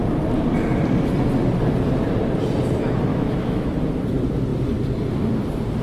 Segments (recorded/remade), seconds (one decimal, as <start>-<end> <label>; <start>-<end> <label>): 0.0-3.1 recorded; 3.1-3.7 remade; 3.7-5.8 recorded